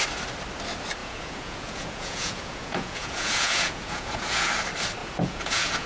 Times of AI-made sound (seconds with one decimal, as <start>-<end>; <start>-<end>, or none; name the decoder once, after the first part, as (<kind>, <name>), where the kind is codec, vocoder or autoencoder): 1.0-4.5 (vocoder, Vocos); 5.0-5.9